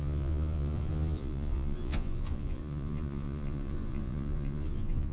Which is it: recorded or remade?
remade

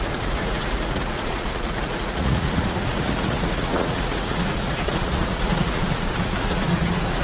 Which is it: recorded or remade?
remade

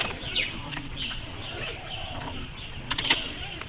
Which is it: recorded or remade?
remade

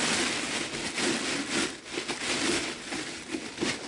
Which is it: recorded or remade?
recorded